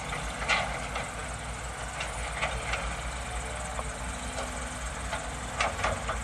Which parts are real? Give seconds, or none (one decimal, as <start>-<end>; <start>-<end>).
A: 0.0-6.2